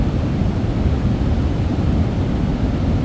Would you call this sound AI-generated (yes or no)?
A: yes